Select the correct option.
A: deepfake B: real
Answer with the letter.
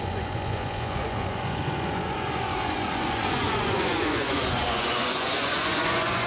A